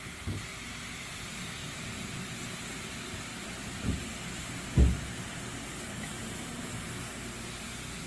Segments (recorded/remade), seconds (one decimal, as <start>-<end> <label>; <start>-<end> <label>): 0.0-1.6 recorded; 1.6-2.4 remade; 2.4-8.1 recorded